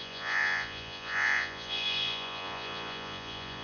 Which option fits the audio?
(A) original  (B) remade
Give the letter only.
B